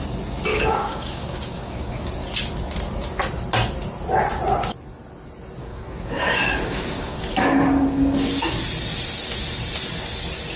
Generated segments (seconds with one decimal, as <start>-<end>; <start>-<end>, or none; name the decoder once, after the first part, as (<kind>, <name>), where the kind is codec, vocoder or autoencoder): 0.5-2.1 (codec, DAC); 5.6-8.6